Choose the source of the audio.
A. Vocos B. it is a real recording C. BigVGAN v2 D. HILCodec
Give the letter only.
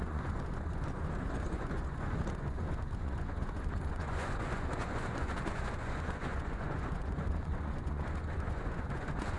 A